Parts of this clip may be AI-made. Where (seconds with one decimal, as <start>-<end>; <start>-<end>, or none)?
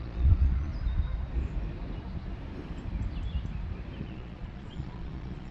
0.0-0.7; 4.0-5.5